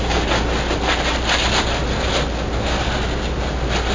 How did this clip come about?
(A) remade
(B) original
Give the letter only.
B